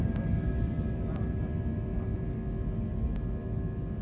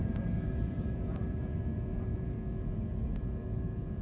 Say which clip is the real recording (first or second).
first